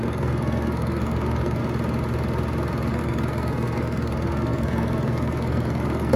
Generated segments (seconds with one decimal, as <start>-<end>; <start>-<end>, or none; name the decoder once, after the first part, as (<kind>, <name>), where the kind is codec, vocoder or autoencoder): 0.0-1.6 (codec, SNAC); 2.9-6.2